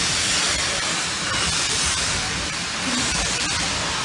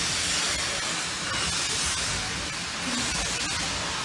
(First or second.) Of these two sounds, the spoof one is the first